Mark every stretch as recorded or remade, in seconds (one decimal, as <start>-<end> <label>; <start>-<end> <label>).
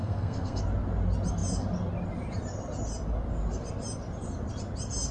0.0-0.6 remade; 0.6-5.1 recorded